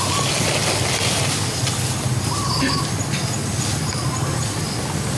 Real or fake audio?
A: real